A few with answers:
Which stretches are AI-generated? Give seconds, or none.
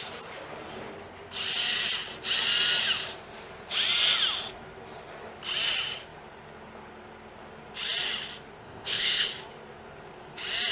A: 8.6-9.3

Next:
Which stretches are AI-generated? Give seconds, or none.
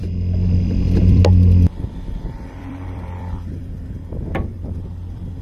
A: 0.0-5.4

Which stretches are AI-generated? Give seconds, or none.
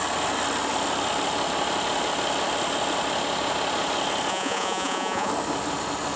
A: 4.3-5.3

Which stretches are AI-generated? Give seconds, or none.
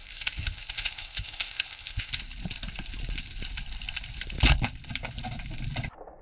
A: 0.0-2.1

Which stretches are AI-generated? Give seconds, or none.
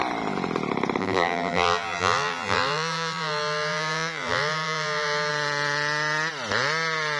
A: 1.0-5.3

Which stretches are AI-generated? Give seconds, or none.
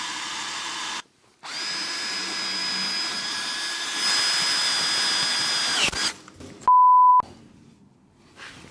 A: none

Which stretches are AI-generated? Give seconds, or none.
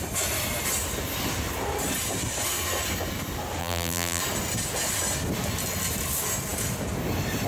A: 3.6-4.2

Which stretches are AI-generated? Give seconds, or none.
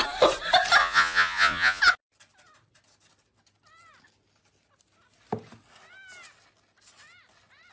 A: 0.8-1.8